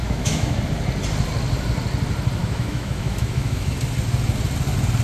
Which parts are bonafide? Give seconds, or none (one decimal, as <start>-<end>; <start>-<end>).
0.6-2.4; 3.7-5.0

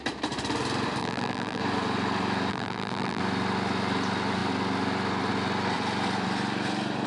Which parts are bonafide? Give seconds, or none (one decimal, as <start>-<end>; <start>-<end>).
0.0-1.0; 1.6-2.5; 3.2-7.1

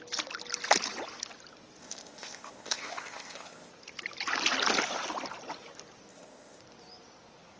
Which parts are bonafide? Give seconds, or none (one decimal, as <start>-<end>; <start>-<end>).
0.0-1.8; 3.7-6.1; 6.6-7.6